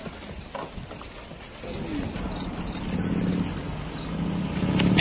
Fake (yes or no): no